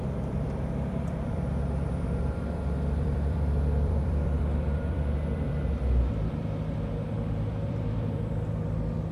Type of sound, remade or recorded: remade